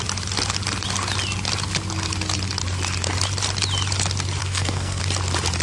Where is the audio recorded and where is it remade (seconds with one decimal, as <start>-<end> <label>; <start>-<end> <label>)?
0.0-4.4 recorded; 4.4-5.0 remade; 5.0-5.6 recorded